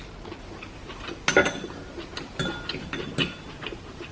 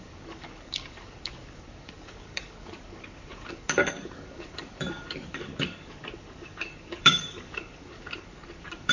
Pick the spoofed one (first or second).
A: second